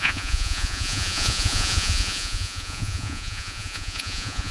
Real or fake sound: fake